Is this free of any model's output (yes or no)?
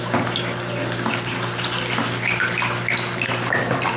yes